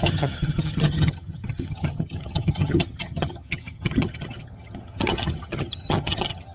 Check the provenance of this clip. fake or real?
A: fake